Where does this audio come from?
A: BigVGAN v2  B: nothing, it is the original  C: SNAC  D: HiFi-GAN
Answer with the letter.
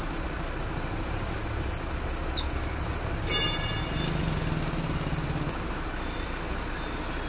B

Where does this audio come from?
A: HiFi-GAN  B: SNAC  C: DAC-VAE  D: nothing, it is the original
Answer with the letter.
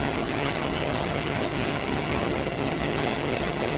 A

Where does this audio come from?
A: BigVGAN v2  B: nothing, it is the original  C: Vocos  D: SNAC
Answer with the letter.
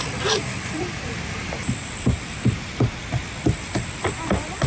B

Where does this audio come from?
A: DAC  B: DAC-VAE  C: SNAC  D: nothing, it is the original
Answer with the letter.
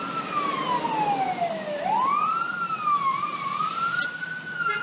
D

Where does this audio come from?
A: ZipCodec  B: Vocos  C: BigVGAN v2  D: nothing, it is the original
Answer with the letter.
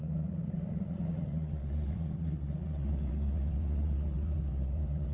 B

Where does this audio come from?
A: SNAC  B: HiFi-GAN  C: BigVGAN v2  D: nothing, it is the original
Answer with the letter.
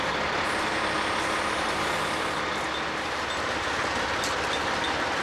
D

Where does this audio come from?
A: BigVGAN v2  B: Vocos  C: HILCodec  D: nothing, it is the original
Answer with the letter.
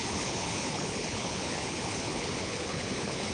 C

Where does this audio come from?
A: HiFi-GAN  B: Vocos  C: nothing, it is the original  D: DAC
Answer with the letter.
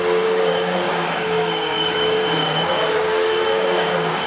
D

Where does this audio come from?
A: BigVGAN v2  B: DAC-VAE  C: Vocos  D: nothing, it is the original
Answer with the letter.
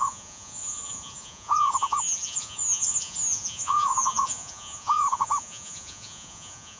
C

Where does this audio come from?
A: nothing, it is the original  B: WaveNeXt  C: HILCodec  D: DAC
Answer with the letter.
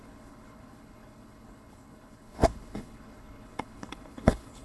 C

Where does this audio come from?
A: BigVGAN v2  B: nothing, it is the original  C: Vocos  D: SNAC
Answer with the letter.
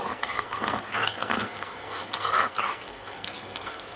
D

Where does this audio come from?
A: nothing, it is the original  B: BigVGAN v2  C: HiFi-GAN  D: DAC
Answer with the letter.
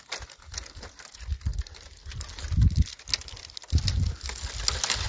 A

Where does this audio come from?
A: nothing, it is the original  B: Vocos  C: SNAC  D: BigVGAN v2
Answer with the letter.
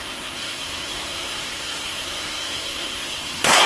C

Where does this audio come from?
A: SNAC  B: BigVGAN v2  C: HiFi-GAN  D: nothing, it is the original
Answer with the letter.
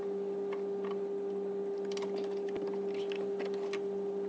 D